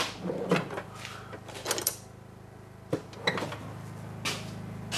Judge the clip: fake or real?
real